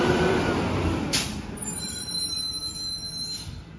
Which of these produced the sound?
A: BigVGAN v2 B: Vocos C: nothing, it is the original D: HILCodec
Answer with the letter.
A